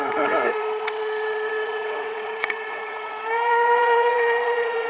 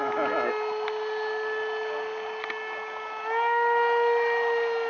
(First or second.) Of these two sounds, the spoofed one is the first